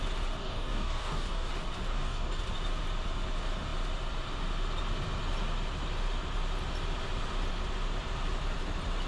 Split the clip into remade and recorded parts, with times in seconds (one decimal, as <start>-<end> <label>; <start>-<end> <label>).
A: 0.0-0.4 recorded; 0.4-1.5 remade; 1.5-1.9 recorded; 1.9-2.4 remade; 2.4-9.1 recorded